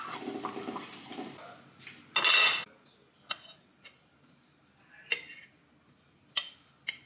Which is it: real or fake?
real